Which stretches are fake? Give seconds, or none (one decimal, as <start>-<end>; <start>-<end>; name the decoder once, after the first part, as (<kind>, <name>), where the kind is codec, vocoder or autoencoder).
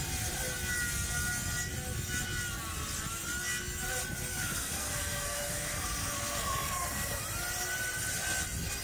4.3-7.2 (codec, SNAC)